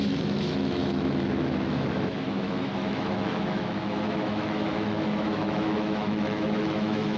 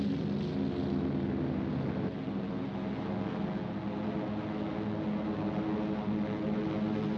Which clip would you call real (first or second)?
second